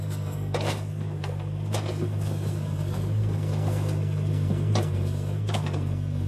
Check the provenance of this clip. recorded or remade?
remade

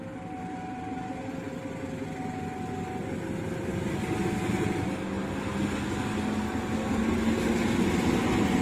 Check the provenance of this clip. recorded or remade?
recorded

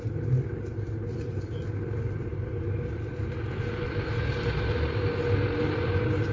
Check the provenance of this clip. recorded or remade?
recorded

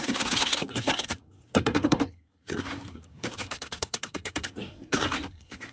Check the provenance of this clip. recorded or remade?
remade